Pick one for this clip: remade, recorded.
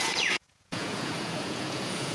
remade